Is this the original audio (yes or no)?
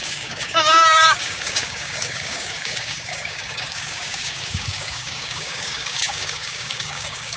no